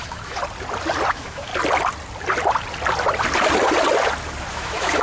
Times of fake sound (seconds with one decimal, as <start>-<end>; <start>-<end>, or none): 0.0-0.4; 1.1-1.5; 4.5-5.0